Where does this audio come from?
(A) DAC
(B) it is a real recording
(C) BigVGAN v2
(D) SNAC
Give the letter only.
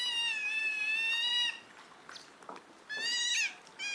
B